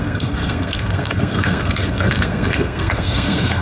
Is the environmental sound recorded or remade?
remade